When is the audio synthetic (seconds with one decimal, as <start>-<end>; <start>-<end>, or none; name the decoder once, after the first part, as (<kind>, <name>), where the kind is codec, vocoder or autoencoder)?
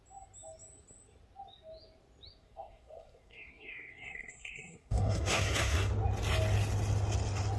2.4-5.9 (codec, SNAC)